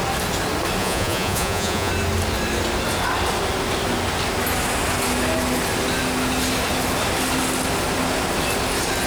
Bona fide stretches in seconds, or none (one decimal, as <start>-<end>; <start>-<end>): 0.0-0.8; 1.9-9.1